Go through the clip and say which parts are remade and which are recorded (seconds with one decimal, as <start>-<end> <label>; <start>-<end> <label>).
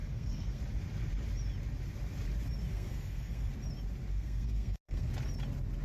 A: 0.0-0.6 remade; 0.6-2.7 recorded; 2.7-3.5 remade; 3.5-4.1 recorded; 4.1-5.1 remade; 5.1-5.8 recorded